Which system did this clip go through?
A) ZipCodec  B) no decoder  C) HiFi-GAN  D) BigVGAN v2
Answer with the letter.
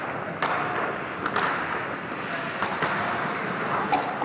B